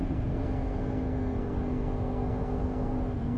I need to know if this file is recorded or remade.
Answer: remade